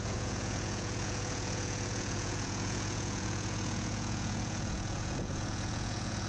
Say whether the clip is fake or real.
fake